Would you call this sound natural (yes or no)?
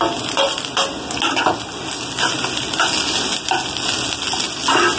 yes